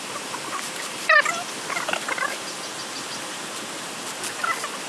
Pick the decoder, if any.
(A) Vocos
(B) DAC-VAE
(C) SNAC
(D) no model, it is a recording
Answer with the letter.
D